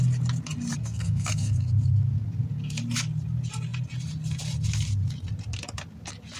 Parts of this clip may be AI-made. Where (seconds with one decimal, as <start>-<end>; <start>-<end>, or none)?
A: 0.8-1.7